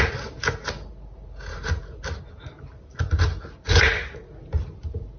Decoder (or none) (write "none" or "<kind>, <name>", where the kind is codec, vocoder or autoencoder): none